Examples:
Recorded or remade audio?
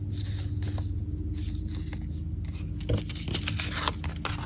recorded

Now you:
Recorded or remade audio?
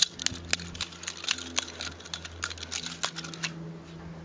recorded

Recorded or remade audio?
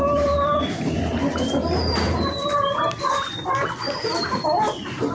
remade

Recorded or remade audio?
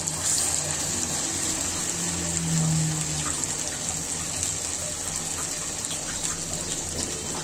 recorded